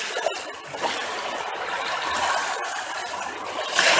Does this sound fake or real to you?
real